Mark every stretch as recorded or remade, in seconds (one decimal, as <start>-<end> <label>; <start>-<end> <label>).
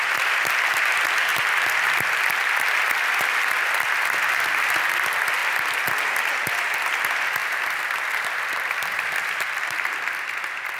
0.0-7.4 recorded; 7.4-9.2 remade; 9.2-10.8 recorded